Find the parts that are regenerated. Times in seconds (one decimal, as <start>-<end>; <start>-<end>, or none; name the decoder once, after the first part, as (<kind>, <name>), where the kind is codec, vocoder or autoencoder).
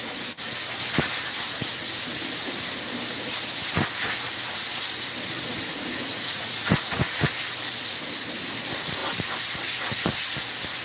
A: 6.1-7.2 (vocoder, Vocos)